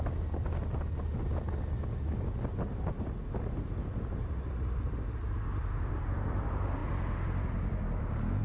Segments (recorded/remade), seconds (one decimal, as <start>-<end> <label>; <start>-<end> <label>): 0.0-8.4 recorded